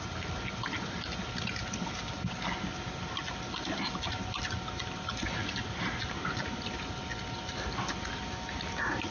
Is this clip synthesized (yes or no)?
no